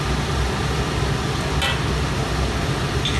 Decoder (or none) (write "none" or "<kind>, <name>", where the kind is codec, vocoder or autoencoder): none